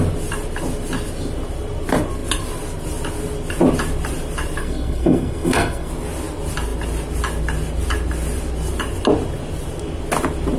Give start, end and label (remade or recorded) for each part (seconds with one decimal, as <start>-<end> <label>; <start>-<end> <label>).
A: 0.0-4.6 recorded; 4.6-5.9 remade; 5.9-10.6 recorded